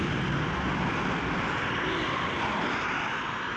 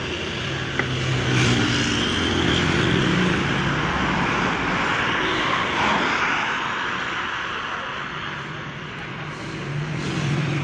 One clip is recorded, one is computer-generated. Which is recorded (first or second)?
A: second